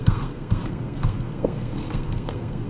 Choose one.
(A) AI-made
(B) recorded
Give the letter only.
A